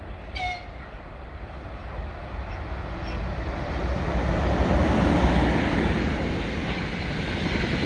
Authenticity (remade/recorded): recorded